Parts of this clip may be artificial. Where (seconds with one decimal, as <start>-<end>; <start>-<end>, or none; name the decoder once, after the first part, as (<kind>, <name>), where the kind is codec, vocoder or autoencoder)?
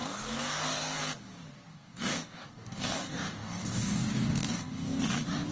0.0-1.0 (codec, DAC); 1.7-5.0